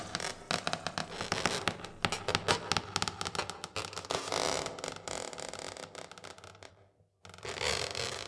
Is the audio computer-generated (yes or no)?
no